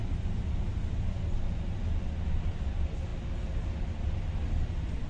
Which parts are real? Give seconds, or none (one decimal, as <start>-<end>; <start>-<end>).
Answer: 0.0-5.1